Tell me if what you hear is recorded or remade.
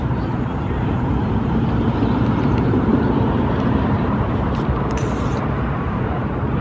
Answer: remade